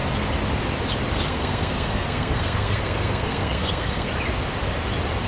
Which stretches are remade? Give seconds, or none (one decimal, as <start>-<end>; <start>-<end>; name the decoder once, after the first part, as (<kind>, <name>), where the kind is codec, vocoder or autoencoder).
1.1-4.1 (codec, SNAC)